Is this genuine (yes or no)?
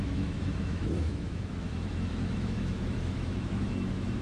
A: no